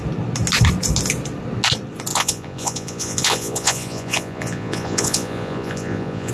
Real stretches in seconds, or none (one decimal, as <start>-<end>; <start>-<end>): 0.0-2.1